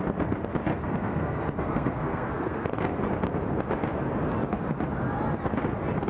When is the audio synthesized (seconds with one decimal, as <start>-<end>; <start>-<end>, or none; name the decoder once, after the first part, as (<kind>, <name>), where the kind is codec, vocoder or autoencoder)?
0.7-2.7 (codec, SNAC)